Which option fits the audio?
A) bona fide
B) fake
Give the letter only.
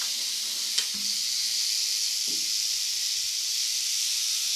A